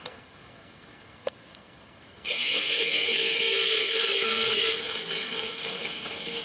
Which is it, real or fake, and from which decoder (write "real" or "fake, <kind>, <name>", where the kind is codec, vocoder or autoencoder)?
fake, codec, SNAC